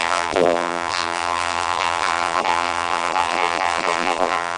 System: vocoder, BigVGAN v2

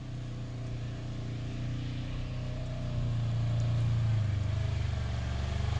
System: none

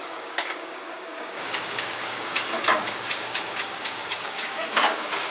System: codec, DAC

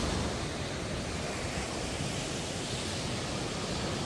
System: none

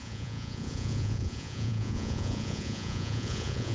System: vocoder, Vocos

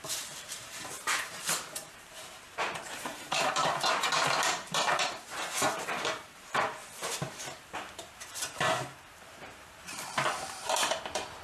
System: vocoder, BigVGAN v2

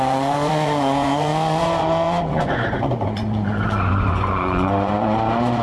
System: vocoder, Vocos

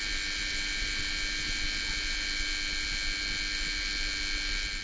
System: none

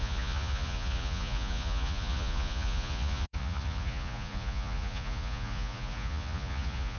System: vocoder, Vocos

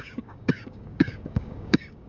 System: codec, DAC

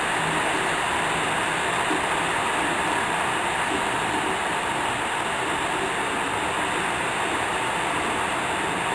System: none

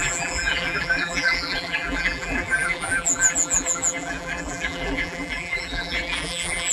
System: vocoder, BigVGAN v2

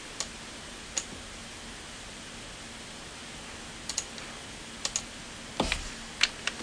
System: none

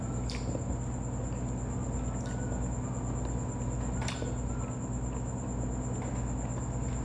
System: none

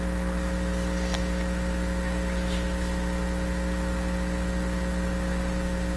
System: none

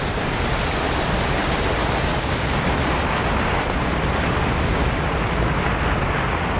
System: none